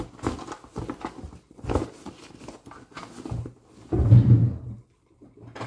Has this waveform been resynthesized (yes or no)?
no